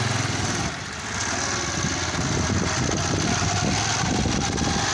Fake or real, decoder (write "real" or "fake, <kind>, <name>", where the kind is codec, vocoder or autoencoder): real